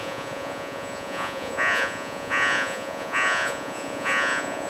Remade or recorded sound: remade